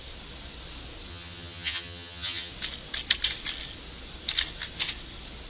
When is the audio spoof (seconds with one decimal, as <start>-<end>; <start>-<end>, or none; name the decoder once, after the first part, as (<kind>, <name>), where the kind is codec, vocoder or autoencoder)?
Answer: 1.1-2.5 (vocoder, HiFi-GAN)